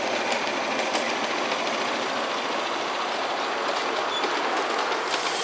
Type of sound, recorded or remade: recorded